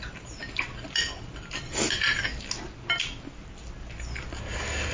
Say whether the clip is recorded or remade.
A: recorded